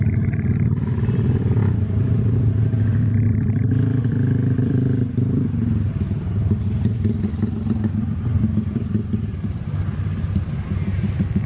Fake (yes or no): yes